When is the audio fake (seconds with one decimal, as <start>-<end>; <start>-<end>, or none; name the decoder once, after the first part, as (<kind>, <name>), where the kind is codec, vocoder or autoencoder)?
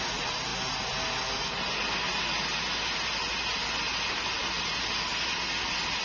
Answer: none